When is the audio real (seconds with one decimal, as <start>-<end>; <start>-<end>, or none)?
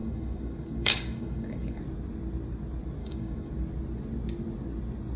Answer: 1.8-3.0; 3.5-5.2